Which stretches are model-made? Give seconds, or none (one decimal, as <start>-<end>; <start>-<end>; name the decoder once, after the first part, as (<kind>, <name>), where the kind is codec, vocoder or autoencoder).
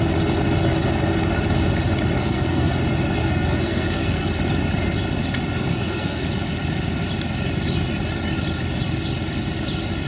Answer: 2.2-2.7 (codec, SNAC); 3.2-4.3; 5.7-6.2